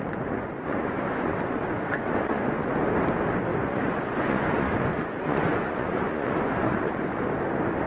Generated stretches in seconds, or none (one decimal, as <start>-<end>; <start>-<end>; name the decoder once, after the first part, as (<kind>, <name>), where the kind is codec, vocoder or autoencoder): 0.0-2.8 (vocoder, Vocos); 3.5-7.2